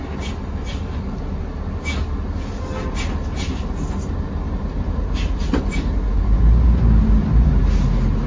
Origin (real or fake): real